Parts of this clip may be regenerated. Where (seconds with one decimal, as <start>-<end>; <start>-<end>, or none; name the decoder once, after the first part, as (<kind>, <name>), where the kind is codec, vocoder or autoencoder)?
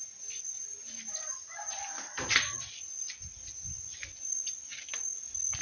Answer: none